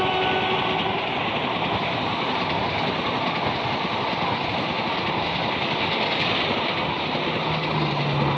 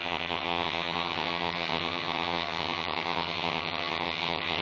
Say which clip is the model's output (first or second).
second